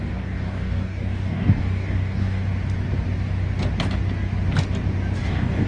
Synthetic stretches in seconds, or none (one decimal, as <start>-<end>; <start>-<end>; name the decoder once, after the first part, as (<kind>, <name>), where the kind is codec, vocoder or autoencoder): 0.0-2.4 (codec, DAC); 5.3-5.7